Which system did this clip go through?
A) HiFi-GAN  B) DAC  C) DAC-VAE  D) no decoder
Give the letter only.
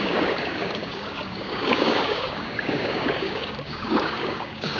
B